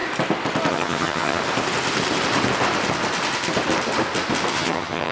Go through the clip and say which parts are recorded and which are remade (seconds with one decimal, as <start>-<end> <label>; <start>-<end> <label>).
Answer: 0.0-0.7 recorded; 0.7-1.4 remade; 1.4-4.5 recorded; 4.5-5.1 remade